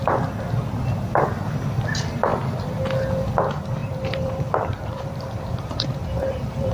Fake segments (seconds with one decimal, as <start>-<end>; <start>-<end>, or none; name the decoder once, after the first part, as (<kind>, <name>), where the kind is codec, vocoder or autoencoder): 3.8-6.7 (vocoder, BigVGAN v2)